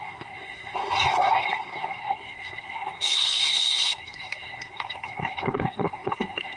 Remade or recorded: remade